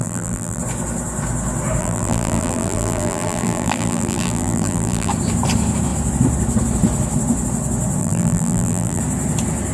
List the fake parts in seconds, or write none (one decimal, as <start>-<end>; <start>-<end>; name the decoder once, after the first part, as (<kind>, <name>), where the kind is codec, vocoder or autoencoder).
0.0-0.6 (vocoder, BigVGAN v2); 1.8-5.1; 8.0-9.0